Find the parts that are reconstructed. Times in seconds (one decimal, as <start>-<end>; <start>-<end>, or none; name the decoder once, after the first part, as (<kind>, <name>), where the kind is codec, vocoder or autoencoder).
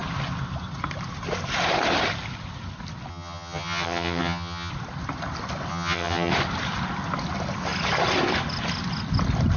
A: 3.1-4.7 (vocoder, HiFi-GAN); 5.7-6.3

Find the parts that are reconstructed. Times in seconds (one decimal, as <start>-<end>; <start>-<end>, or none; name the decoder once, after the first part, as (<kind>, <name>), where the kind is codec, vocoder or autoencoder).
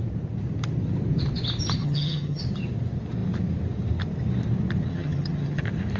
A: 1.8-2.4 (vocoder, HiFi-GAN); 4.9-5.6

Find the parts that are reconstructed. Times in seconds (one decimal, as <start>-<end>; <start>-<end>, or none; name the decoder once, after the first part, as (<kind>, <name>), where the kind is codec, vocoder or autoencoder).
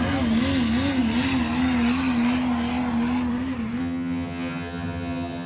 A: 3.8-5.5 (vocoder, HiFi-GAN)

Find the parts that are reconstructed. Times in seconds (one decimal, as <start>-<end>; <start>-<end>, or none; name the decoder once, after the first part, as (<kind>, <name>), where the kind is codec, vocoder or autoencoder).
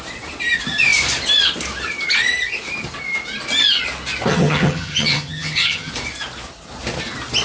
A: 4.3-5.9 (vocoder, HiFi-GAN)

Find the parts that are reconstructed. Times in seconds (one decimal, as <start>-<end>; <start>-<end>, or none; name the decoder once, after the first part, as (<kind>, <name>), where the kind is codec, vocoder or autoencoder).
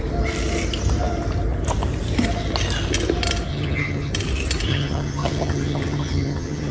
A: 3.5-4.1 (vocoder, HiFi-GAN); 4.7-6.7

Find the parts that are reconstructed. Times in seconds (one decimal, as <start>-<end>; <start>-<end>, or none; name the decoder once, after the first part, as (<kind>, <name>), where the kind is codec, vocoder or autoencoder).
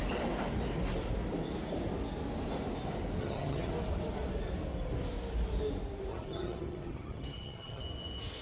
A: 3.2-3.7 (vocoder, HiFi-GAN); 6.1-7.8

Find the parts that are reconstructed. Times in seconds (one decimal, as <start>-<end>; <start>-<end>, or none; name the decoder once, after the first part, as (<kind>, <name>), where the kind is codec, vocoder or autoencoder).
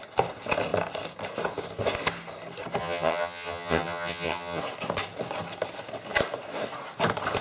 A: 2.8-4.6 (vocoder, HiFi-GAN)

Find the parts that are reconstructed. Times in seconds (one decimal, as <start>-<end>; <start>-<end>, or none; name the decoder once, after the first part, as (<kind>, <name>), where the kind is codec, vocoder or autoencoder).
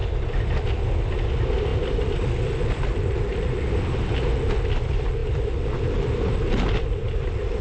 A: none